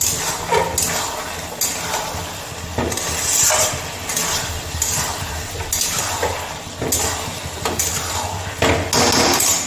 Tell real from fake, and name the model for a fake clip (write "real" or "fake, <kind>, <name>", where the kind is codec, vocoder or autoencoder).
real